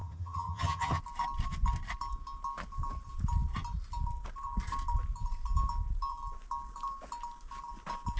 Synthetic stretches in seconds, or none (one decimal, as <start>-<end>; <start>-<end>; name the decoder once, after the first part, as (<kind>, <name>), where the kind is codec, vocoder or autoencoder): 0.0-1.0 (vocoder, HiFi-GAN)